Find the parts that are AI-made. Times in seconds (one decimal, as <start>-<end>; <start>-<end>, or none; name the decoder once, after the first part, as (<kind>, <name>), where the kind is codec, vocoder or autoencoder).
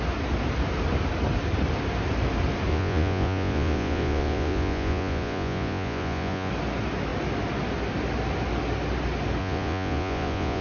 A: 2.7-6.5 (vocoder, Vocos); 9.4-10.6